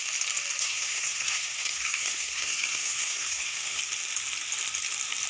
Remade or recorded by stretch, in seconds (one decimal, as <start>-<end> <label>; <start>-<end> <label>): 0.0-0.6 recorded; 0.6-3.8 remade; 3.8-5.3 recorded